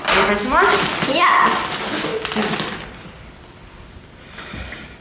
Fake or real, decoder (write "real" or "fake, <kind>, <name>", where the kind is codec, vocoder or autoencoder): real